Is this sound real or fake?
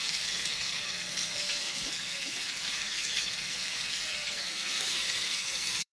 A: fake